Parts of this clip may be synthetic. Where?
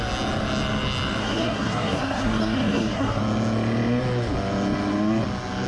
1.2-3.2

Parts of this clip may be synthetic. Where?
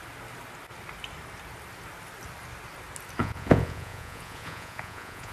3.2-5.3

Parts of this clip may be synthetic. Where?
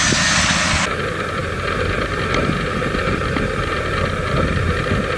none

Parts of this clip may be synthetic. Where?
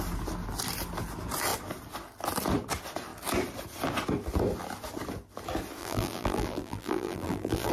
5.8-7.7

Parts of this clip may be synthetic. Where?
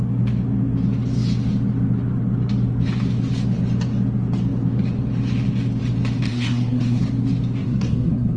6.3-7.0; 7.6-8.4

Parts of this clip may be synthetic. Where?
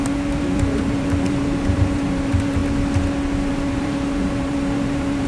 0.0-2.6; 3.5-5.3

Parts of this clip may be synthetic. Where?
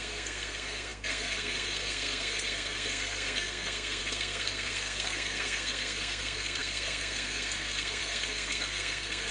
0.0-9.3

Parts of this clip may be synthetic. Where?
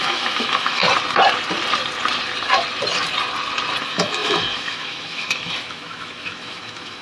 0.0-0.8; 3.8-7.0